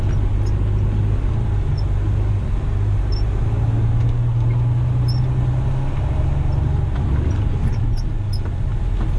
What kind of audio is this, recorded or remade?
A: recorded